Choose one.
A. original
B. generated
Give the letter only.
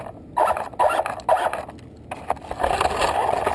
A